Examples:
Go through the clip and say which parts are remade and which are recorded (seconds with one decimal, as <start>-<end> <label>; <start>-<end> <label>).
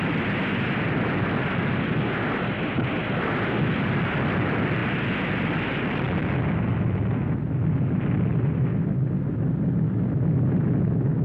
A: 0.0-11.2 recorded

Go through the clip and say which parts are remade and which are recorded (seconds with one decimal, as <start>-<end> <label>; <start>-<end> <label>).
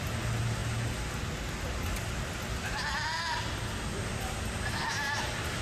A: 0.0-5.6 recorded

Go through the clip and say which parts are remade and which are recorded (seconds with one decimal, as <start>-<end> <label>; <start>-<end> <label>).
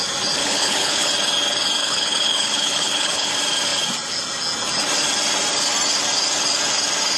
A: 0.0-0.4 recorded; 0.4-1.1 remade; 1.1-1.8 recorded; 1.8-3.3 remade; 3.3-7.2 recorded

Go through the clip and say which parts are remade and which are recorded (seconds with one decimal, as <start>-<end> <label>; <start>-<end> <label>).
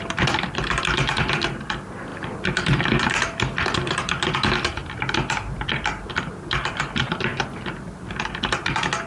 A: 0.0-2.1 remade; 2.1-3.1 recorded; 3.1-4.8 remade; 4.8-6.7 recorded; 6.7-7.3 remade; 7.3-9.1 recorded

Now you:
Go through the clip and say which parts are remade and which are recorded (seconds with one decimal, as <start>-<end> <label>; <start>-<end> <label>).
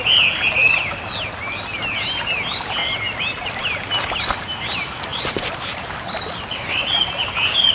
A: 0.0-2.8 recorded; 2.8-3.6 remade; 3.6-5.1 recorded; 5.1-7.0 remade; 7.0-7.7 recorded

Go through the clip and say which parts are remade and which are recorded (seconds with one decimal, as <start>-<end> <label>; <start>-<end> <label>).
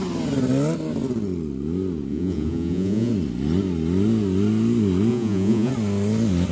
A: 0.0-2.1 recorded; 2.1-3.1 remade; 3.1-5.1 recorded; 5.1-5.7 remade; 5.7-6.5 recorded